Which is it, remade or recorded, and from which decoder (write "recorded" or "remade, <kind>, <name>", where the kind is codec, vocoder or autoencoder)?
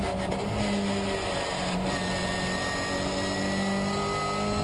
recorded